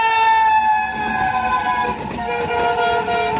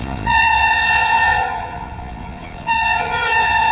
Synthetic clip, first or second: second